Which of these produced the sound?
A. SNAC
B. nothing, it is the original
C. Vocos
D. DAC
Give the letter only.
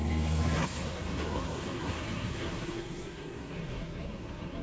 A